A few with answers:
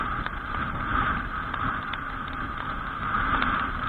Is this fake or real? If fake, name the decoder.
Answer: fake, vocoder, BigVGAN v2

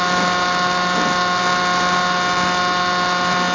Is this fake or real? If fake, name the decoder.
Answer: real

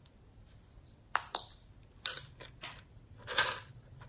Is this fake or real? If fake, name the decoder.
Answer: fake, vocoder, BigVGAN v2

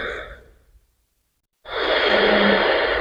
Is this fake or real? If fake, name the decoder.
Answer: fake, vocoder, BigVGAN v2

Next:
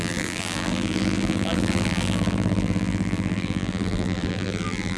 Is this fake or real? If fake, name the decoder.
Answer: fake, vocoder, BigVGAN v2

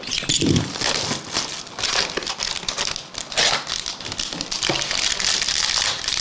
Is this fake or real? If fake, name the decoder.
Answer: real